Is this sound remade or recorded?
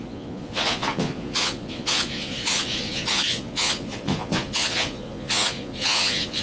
remade